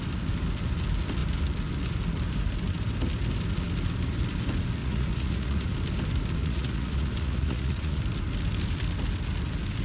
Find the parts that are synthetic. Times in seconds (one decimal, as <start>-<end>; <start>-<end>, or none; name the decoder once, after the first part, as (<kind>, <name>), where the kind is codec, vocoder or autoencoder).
4.8-5.7 (vocoder, Vocos); 6.4-8.0